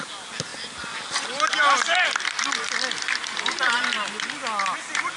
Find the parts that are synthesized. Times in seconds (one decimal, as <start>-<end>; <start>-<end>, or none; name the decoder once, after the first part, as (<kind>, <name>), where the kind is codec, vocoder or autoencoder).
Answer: none